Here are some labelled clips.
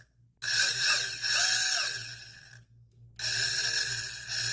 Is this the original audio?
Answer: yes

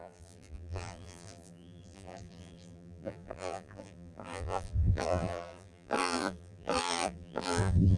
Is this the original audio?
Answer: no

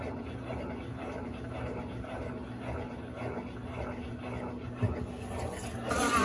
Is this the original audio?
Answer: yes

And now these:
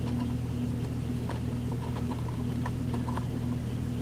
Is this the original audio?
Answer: yes